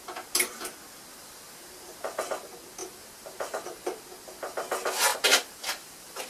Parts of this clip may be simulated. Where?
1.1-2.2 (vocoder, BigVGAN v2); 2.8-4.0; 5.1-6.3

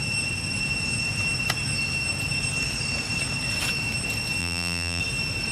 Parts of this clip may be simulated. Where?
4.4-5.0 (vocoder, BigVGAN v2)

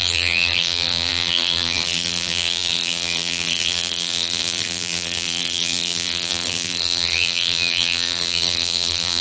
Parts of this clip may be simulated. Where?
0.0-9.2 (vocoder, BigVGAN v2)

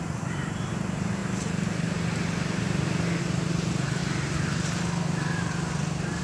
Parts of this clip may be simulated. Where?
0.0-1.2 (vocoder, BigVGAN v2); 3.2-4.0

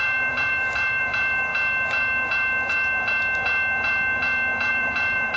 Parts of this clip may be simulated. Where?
0.0-1.5 (vocoder, BigVGAN v2); 4.7-5.4